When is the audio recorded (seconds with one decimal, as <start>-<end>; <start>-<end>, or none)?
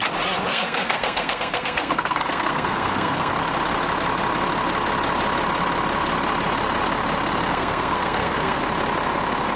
0.0-0.5; 3.3-7.5; 8.6-9.6